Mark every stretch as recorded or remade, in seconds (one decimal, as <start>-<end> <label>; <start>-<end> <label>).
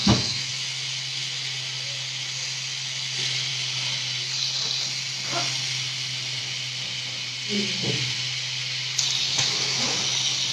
0.0-0.5 remade; 0.5-9.2 recorded; 9.2-10.0 remade; 10.0-10.5 recorded